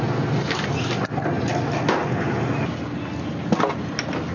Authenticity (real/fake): real